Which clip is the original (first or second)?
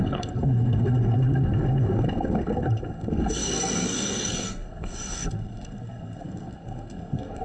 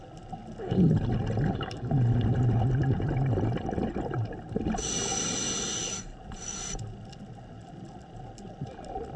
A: second